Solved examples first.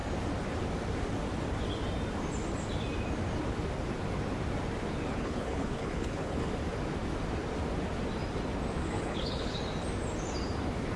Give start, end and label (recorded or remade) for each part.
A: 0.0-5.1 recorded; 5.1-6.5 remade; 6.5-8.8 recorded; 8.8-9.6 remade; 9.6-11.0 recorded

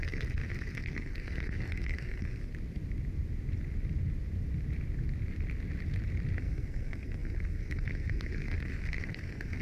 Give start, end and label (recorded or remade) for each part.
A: 0.0-2.5 remade; 2.5-6.4 recorded; 6.4-9.6 remade

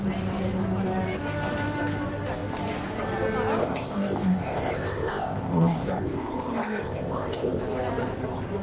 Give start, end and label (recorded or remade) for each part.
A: 0.0-3.6 recorded; 3.6-7.6 remade; 7.6-8.6 recorded